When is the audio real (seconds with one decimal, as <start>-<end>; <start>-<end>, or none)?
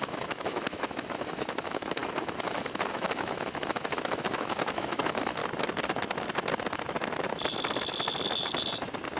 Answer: 5.4-9.2